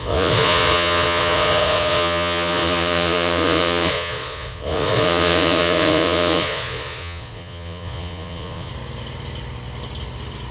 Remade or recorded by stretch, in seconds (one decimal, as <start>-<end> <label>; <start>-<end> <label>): 0.0-8.7 remade; 8.7-10.5 recorded